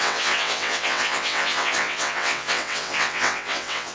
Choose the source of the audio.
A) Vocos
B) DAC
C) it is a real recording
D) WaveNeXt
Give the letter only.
D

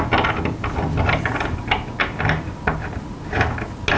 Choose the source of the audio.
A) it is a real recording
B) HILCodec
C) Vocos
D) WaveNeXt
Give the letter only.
A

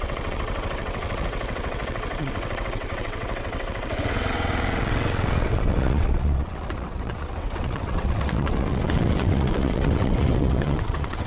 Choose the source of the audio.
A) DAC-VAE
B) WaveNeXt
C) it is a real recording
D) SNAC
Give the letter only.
B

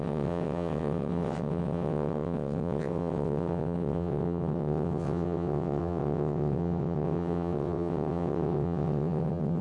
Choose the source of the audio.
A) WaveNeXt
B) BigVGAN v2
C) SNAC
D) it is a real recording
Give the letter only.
A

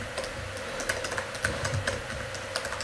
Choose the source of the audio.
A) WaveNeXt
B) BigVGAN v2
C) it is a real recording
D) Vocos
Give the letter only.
C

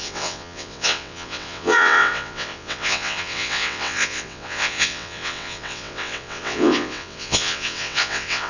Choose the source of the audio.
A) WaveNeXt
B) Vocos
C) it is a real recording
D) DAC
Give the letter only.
A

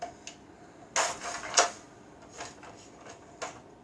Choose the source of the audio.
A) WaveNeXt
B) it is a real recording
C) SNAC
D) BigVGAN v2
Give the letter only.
B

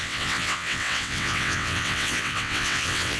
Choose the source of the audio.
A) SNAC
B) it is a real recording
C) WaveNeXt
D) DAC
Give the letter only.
C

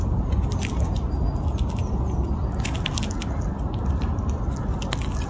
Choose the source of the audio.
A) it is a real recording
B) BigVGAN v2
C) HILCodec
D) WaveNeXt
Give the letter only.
A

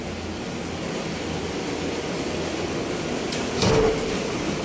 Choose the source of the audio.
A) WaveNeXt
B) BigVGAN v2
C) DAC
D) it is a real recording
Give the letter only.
D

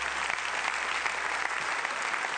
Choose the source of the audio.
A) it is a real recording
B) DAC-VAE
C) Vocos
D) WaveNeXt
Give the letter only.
A